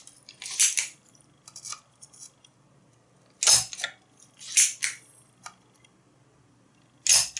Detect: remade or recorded recorded